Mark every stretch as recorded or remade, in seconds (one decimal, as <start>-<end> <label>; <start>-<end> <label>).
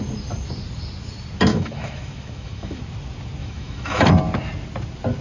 0.0-1.5 recorded; 1.5-2.8 remade; 2.8-3.4 recorded; 3.4-4.1 remade; 4.1-5.2 recorded